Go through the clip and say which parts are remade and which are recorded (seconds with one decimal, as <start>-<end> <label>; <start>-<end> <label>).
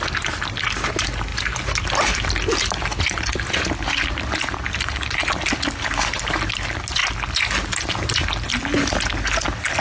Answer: 0.0-9.8 recorded